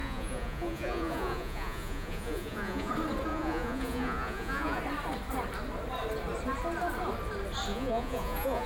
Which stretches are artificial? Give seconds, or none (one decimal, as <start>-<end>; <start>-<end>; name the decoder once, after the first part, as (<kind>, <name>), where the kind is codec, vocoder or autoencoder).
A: 0.0-2.9 (vocoder, Vocos); 3.3-4.8; 7.7-8.7